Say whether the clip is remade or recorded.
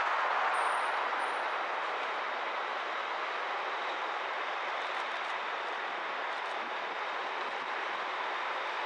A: recorded